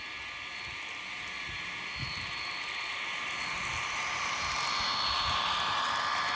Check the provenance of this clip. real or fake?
real